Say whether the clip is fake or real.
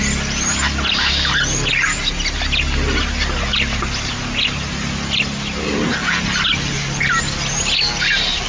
real